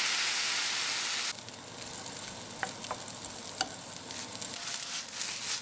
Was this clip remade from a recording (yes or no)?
no